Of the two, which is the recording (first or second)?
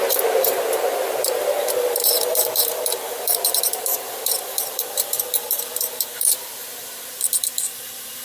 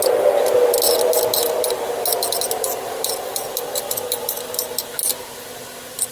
second